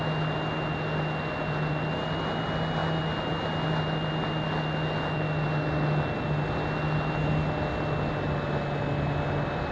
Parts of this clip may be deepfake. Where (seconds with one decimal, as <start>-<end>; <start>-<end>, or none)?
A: none